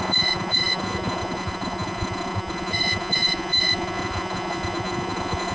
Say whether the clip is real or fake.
fake